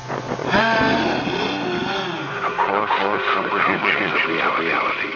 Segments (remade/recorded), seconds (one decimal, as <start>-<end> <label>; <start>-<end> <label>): 0.0-0.6 remade; 0.6-1.8 recorded; 1.8-4.1 remade; 4.1-5.2 recorded